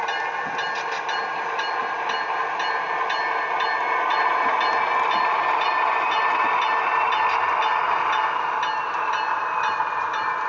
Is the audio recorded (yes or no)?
yes